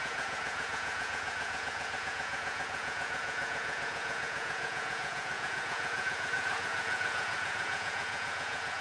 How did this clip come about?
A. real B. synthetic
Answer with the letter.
B